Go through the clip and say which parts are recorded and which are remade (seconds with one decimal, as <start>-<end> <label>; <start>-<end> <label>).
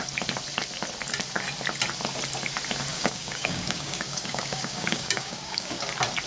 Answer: 0.0-2.9 recorded; 2.9-5.8 remade; 5.8-6.3 recorded